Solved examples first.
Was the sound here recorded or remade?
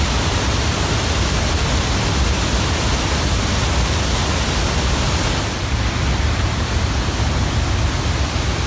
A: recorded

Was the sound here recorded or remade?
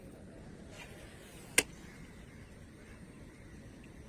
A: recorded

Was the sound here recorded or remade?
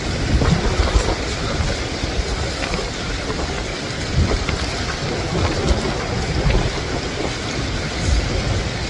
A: recorded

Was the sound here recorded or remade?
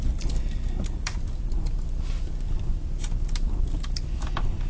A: remade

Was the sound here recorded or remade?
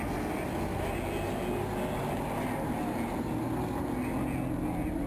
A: recorded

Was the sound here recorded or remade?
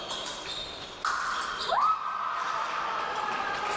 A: remade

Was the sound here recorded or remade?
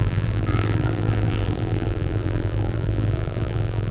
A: remade